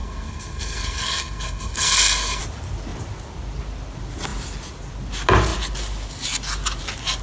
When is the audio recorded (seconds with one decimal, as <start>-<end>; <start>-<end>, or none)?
2.4-7.2